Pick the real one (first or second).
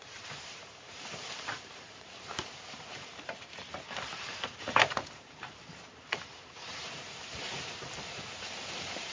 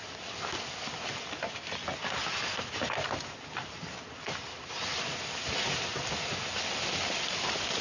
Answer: second